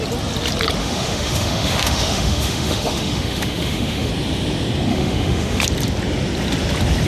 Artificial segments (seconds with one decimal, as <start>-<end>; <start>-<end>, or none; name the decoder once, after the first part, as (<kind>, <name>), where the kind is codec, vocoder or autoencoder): 0.8-4.1 (autoencoder, DAC-VAE); 4.9-5.6

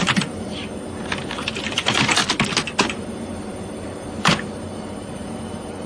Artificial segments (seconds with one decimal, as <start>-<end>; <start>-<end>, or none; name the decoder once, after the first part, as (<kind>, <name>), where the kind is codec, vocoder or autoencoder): 0.0-2.2 (vocoder, BigVGAN v2); 2.8-5.9